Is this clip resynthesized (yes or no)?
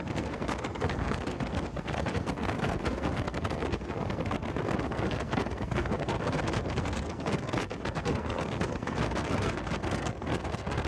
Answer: yes